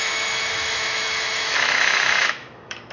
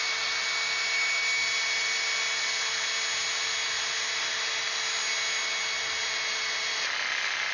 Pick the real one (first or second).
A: second